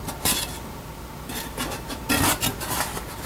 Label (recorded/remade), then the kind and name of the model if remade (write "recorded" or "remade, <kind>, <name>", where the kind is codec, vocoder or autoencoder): recorded